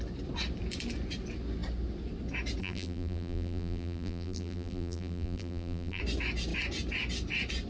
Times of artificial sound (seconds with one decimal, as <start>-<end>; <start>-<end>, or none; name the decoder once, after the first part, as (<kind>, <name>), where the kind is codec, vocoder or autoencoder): 2.6-6.0 (vocoder, BigVGAN v2)